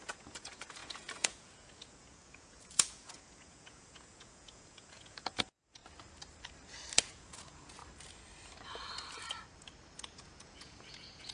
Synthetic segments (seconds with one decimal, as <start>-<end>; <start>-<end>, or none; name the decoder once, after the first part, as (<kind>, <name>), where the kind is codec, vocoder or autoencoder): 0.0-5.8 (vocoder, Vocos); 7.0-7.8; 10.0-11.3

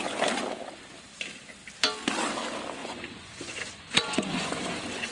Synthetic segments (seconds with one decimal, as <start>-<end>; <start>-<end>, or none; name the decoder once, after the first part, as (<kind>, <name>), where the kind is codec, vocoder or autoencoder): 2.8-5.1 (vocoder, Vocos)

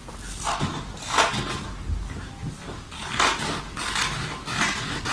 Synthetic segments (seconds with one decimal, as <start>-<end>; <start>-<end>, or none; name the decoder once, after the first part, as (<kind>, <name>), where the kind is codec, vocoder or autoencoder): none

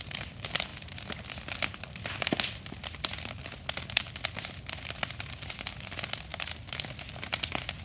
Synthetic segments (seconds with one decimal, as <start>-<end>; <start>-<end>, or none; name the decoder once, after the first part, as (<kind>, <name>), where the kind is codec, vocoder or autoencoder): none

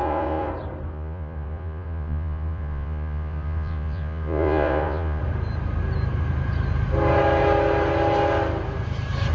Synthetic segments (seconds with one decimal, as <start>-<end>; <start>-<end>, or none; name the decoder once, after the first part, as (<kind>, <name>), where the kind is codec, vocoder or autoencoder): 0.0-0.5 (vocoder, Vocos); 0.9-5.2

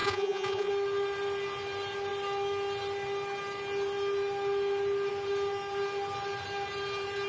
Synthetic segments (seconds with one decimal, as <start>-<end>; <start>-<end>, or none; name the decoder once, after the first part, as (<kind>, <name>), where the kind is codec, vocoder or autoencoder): 0.0-0.7 (vocoder, Vocos)

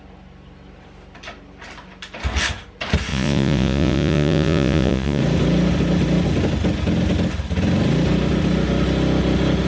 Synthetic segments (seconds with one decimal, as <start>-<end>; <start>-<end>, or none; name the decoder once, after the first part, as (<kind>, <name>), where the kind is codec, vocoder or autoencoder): 3.1-5.2 (vocoder, Vocos)